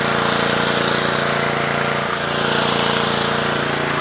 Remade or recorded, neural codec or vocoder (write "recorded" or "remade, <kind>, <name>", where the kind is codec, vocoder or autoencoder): recorded